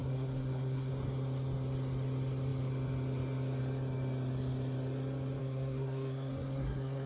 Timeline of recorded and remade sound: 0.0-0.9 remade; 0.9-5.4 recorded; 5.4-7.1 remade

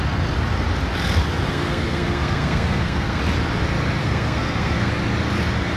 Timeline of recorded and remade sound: 0.0-1.5 recorded; 1.5-3.2 remade; 3.2-4.0 recorded; 4.0-4.9 remade; 4.9-5.8 recorded